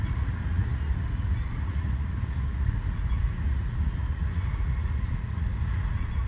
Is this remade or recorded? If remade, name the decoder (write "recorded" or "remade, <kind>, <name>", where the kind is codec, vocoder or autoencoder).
remade, vocoder, Vocos